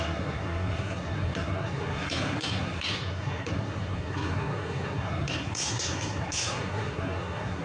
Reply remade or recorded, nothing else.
remade